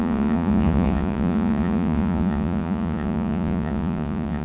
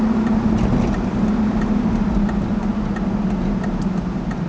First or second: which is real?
second